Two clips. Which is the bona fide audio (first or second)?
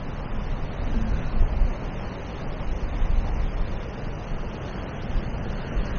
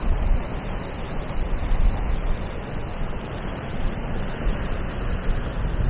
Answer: first